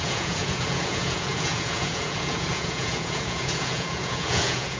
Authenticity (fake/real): fake